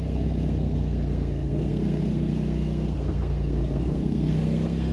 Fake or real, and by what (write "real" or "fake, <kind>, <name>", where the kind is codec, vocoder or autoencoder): fake, codec, SNAC